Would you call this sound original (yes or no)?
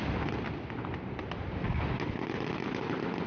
yes